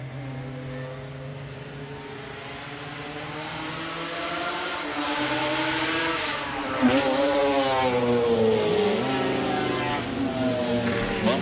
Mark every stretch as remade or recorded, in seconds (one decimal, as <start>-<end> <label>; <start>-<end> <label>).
0.0-1.3 recorded; 1.3-3.7 remade; 3.7-4.2 recorded; 4.2-7.4 remade; 7.4-11.4 recorded